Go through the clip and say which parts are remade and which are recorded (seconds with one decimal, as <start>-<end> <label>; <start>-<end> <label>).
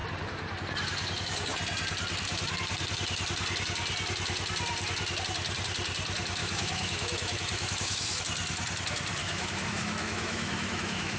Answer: 0.0-6.4 recorded; 6.4-8.2 remade; 8.2-9.2 recorded; 9.2-11.2 remade